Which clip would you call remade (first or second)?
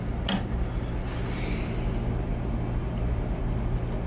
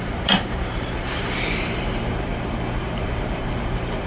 second